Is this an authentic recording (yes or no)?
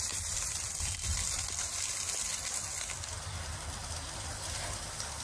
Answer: yes